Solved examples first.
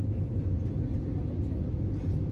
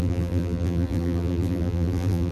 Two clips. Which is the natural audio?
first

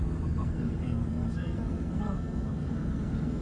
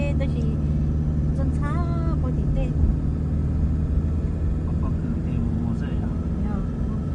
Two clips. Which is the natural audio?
second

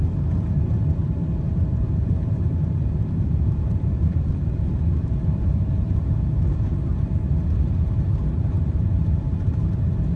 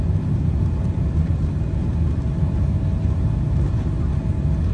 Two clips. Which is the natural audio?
second